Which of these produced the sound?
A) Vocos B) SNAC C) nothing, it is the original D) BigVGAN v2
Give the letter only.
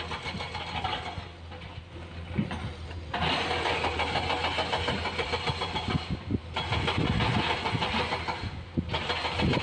C